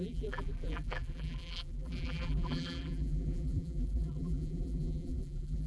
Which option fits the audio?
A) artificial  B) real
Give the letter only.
A